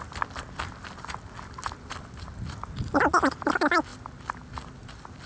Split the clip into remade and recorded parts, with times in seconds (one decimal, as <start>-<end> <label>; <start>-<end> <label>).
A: 0.0-5.3 recorded